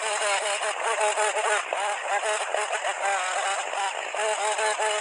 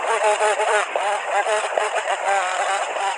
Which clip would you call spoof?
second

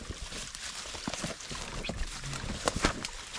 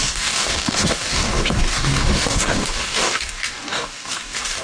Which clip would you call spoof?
second